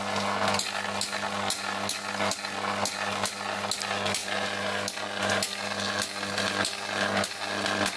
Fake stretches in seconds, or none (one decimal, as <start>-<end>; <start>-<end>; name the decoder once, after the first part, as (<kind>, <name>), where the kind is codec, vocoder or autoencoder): none